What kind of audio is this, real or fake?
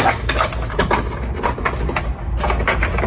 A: real